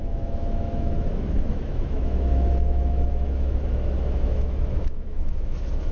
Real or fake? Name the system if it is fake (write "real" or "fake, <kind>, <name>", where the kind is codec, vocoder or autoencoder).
fake, autoencoder, DAC-VAE